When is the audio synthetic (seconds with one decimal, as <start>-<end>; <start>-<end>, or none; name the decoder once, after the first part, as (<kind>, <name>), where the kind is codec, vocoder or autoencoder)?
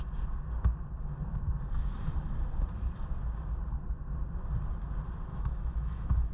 5.3-6.3 (autoencoder, DAC-VAE)